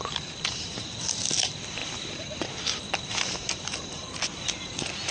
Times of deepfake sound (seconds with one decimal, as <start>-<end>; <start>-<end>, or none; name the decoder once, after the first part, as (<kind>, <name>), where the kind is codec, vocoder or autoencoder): none